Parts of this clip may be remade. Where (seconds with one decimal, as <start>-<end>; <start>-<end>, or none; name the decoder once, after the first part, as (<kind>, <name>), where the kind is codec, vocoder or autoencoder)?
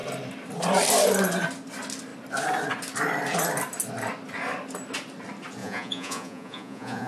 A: 5.6-7.1 (vocoder, Vocos)